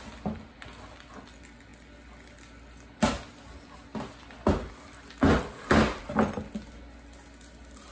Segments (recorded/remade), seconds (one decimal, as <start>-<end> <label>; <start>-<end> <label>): 0.0-7.9 recorded

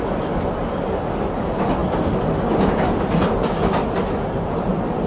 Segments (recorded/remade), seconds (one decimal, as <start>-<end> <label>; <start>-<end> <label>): 0.0-5.1 recorded

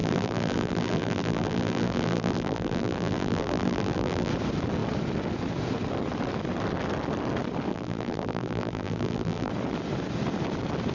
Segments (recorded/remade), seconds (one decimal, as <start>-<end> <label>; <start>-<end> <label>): 0.0-4.3 remade; 4.3-7.7 recorded; 7.7-9.5 remade; 9.5-10.9 recorded

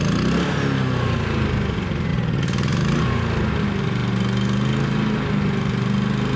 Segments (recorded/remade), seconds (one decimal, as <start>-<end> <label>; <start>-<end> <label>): 0.0-6.4 recorded